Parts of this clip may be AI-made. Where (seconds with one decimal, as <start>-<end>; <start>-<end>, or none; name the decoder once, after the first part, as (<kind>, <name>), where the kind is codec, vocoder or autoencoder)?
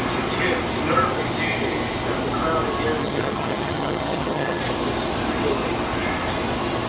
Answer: 3.0-4.6 (vocoder, HiFi-GAN)